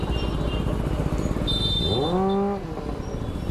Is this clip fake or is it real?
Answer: real